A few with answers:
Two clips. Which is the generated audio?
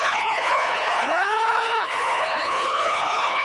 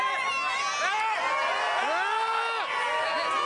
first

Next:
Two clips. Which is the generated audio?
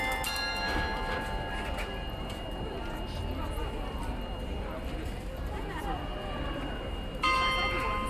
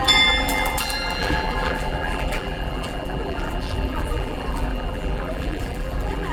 second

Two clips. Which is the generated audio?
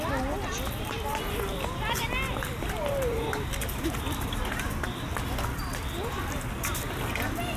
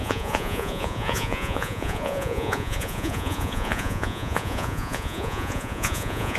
second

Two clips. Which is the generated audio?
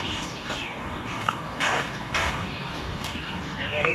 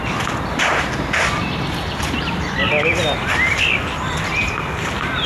first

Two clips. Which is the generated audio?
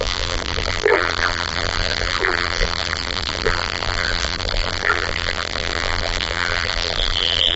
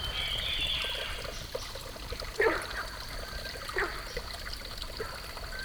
first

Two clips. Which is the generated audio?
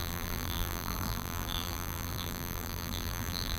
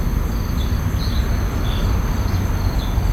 first